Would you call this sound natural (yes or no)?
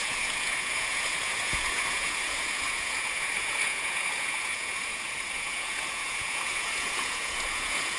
no